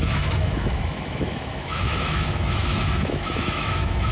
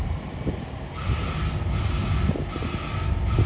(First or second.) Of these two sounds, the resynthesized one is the first